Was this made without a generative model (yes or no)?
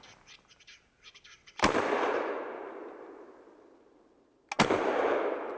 yes